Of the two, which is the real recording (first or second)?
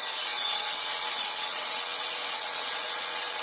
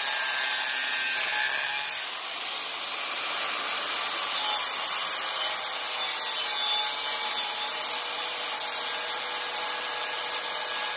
second